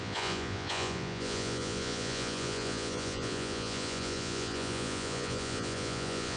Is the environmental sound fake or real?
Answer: fake